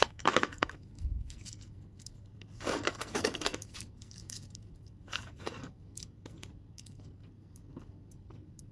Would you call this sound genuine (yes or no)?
no